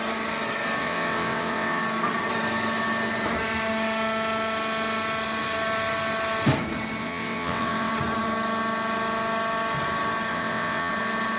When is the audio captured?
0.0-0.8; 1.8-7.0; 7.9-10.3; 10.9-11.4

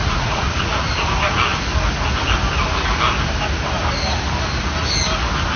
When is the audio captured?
0.7-5.6

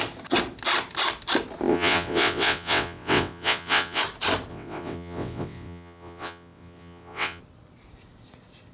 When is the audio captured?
0.0-1.7; 4.0-4.5; 7.4-8.7

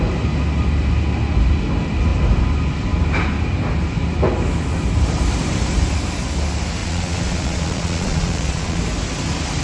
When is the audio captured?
0.0-6.8; 8.8-9.6